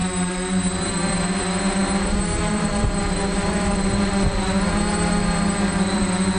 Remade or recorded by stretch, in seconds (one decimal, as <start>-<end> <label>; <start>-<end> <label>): 0.0-6.4 remade